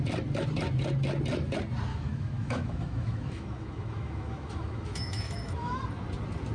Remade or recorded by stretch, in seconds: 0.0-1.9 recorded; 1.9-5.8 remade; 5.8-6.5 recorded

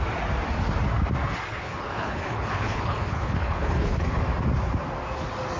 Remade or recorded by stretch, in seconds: 0.0-1.5 recorded; 1.5-4.2 remade; 4.2-5.6 recorded

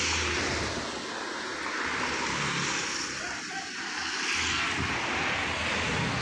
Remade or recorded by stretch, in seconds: 0.0-6.2 recorded

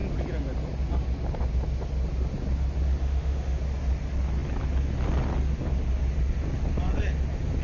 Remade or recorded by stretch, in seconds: 0.0-3.0 recorded; 3.0-3.6 remade; 3.6-7.6 recorded

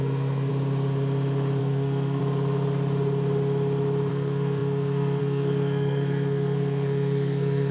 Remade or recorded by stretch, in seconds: 0.0-0.5 remade; 0.5-1.6 recorded; 1.6-2.2 remade; 2.2-4.1 recorded; 4.1-7.7 remade